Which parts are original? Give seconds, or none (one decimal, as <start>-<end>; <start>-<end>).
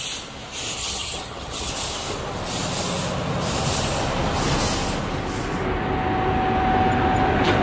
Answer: 0.0-0.8; 1.7-7.6